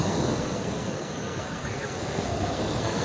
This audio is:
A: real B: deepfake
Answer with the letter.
B